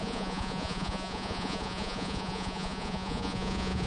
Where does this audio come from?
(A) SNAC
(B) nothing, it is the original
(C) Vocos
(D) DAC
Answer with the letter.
C